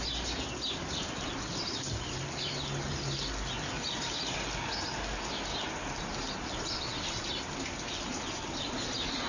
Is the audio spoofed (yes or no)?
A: no